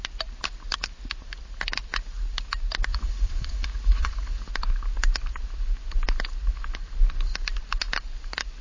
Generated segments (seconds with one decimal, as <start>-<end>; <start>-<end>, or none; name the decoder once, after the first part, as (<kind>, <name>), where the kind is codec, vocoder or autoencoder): 2.9-4.5 (vocoder, Vocos)